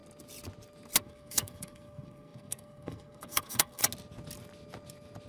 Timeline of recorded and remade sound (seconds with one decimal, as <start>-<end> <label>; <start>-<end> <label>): 0.0-1.0 recorded; 1.0-3.8 remade; 3.8-5.3 recorded